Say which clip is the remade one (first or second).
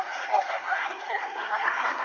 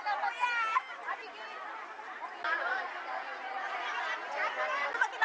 first